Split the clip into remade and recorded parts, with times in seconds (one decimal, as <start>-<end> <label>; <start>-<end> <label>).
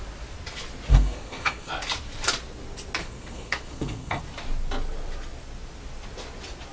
0.0-0.9 recorded; 0.9-1.7 remade; 1.7-3.0 recorded; 3.0-4.2 remade; 4.2-6.7 recorded